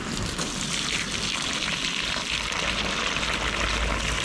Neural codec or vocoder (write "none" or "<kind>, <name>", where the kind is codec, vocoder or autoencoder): none